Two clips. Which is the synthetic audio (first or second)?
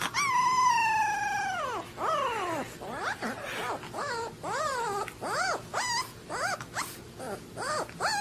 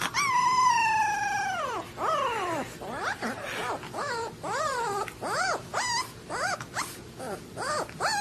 second